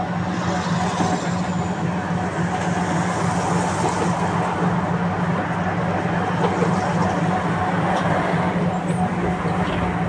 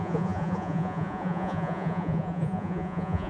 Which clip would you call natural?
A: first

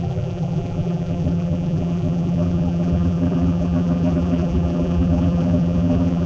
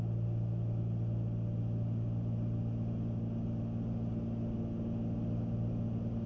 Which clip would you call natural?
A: second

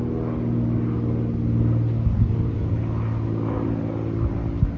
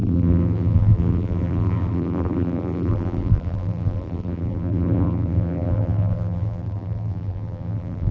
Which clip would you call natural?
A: first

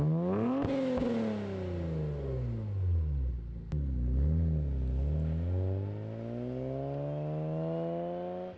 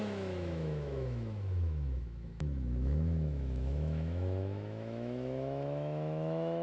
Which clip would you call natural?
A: first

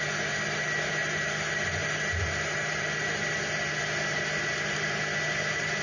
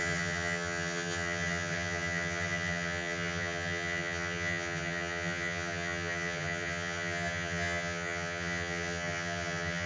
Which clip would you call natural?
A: first